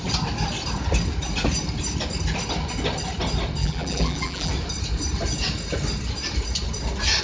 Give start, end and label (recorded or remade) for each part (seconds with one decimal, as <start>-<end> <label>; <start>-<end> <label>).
0.0-3.6 recorded; 3.6-4.5 remade; 4.5-7.2 recorded